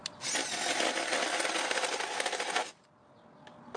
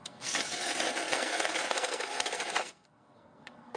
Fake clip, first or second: second